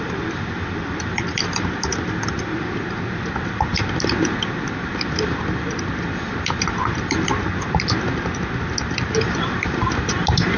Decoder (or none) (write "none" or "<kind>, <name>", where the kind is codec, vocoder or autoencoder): vocoder, BigVGAN v2